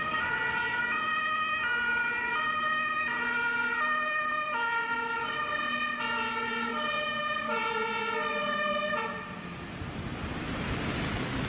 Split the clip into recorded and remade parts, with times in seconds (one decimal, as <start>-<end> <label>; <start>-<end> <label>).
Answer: 0.0-6.7 recorded; 6.7-7.6 remade; 7.6-11.5 recorded